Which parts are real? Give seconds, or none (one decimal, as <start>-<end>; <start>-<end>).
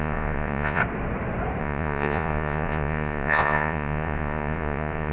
0.8-1.6